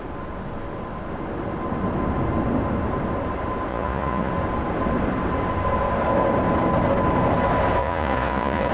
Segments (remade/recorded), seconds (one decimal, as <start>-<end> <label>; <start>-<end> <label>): 0.0-3.7 recorded; 3.7-4.3 remade; 4.3-7.8 recorded; 7.8-8.7 remade